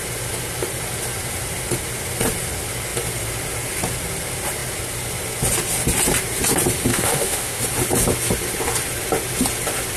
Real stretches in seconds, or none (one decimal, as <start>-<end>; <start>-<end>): 0.0-6.9; 7.6-10.0